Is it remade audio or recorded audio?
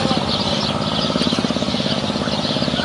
recorded